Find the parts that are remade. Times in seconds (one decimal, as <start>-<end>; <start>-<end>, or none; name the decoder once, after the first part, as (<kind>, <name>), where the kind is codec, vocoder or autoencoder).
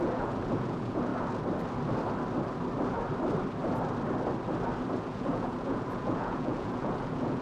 0.0-1.1 (vocoder, Vocos); 5.0-7.4